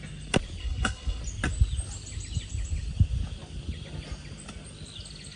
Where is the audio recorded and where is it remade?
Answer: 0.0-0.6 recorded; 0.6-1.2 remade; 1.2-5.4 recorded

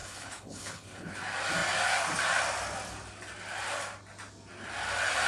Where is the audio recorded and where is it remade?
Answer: 0.0-1.2 remade; 1.2-5.3 recorded

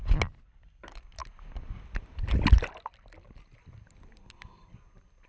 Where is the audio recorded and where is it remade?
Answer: 0.0-5.3 recorded

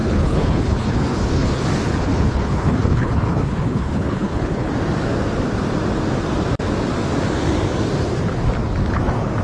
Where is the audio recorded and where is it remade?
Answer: 0.0-1.6 remade; 1.6-2.0 recorded; 2.0-4.7 remade; 4.7-9.4 recorded

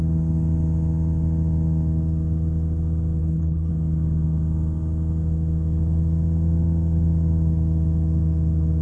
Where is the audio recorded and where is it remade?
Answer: 0.0-3.2 recorded; 3.2-3.7 remade; 3.7-8.8 recorded

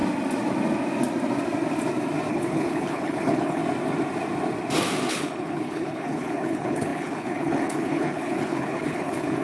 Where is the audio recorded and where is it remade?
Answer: 0.0-2.3 recorded; 2.3-3.6 remade; 3.6-5.1 recorded; 5.1-9.4 remade

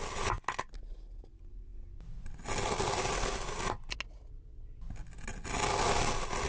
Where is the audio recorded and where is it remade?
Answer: 0.0-6.5 recorded